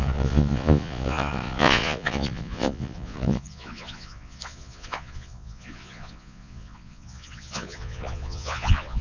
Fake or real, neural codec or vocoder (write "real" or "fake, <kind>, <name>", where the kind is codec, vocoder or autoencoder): fake, vocoder, Vocos